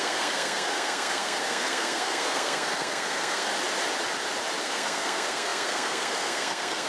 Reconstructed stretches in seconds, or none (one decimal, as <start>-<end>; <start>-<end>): 0.0-3.5; 4.6-6.9